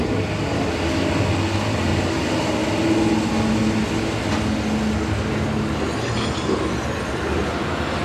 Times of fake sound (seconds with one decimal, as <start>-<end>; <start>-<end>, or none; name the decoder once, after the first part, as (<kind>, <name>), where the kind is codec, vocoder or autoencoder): none